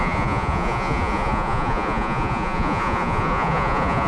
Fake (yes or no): yes